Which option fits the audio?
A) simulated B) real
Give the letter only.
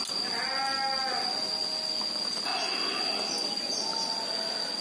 B